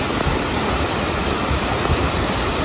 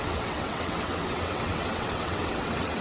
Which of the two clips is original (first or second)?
first